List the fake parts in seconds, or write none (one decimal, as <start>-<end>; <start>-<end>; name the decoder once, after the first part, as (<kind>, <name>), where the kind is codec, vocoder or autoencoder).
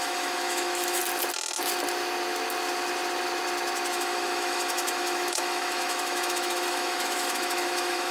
0.0-1.0 (autoencoder, DAC-VAE); 3.9-8.1